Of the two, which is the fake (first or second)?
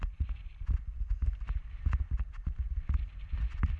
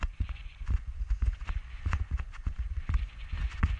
second